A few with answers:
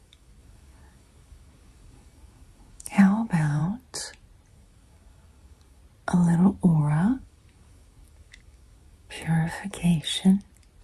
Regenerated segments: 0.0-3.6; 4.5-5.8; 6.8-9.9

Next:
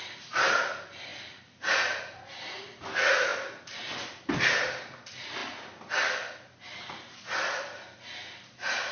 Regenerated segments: none

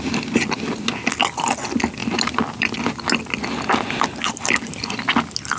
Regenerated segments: none

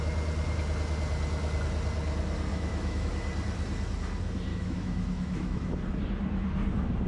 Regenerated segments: 2.5-3.1; 4.5-5.8

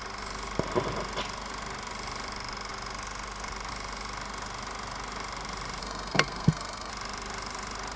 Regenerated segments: 5.8-6.9

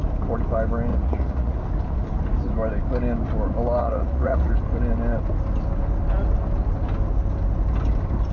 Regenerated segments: 0.9-1.6; 3.8-4.5